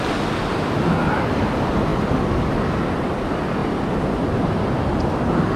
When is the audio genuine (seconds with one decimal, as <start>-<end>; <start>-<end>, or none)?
0.0-5.6